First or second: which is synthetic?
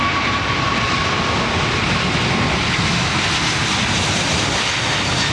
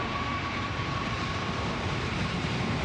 second